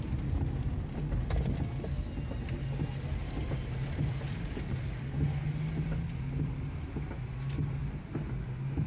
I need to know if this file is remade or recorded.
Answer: recorded